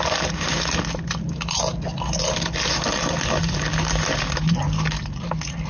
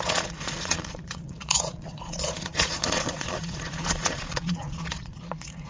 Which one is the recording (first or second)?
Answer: first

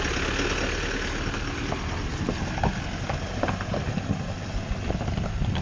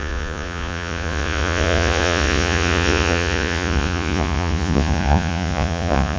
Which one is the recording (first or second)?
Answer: first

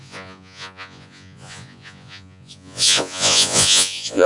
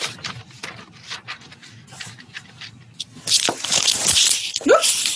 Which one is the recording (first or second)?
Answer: second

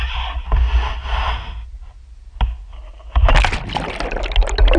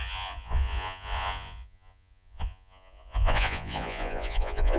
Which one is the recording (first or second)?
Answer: first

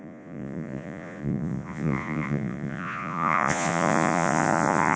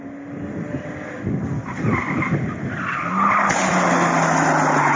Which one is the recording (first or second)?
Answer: second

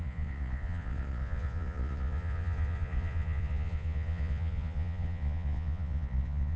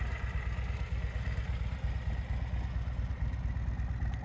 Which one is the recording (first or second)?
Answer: second